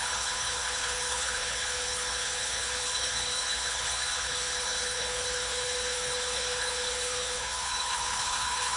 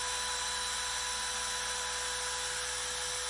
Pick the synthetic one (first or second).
first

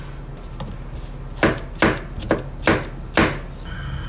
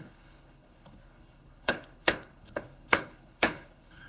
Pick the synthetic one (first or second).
second